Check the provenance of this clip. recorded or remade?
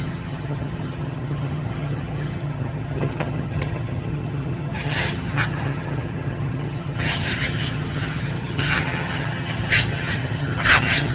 remade